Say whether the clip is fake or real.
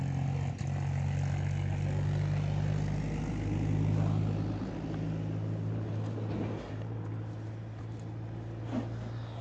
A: real